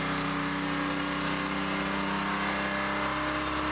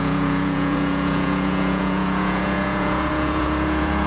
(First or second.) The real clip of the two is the first